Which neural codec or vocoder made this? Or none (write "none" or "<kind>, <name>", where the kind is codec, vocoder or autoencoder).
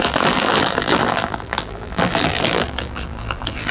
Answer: vocoder, BigVGAN v2